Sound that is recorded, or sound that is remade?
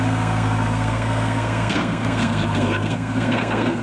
remade